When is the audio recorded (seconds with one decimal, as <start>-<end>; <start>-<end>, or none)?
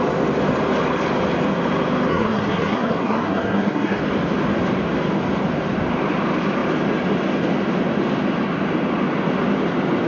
0.0-2.1; 4.0-10.1